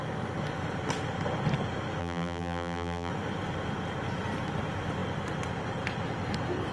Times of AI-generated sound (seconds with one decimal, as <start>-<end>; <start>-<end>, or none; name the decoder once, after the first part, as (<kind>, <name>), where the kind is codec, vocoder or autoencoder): 2.0-3.1 (vocoder, BigVGAN v2)